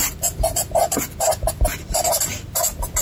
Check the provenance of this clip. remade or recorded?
recorded